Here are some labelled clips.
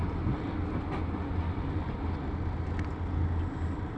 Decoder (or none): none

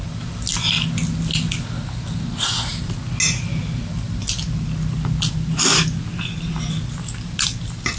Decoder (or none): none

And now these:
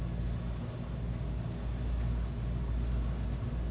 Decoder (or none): none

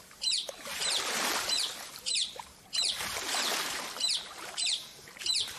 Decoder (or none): vocoder, BigVGAN v2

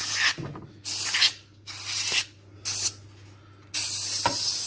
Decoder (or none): none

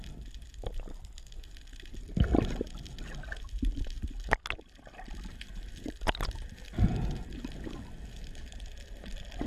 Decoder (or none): none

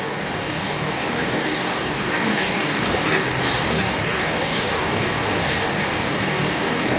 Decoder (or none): codec, DAC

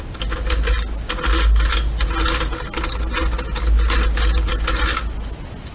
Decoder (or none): none